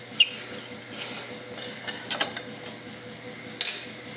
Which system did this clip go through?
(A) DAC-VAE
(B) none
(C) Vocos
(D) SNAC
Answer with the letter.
B